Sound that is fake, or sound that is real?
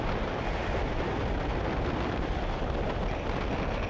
real